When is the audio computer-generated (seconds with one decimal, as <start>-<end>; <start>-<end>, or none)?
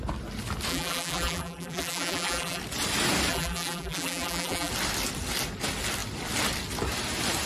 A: 0.7-2.6; 3.3-4.7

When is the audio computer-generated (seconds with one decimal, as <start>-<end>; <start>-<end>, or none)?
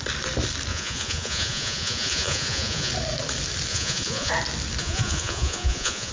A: 0.7-2.9; 3.7-4.3; 4.8-6.1